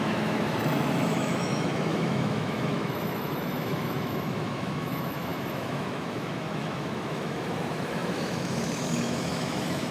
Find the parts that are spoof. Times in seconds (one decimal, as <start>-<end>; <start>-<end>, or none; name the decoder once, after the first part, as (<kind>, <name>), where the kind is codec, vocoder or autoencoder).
0.0-9.9 (autoencoder, DAC-VAE)